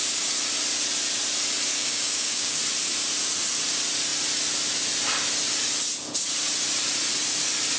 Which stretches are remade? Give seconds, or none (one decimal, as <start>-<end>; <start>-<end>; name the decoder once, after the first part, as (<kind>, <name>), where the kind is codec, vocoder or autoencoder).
1.7-2.6 (codec, DAC)